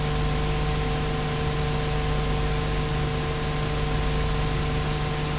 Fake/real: real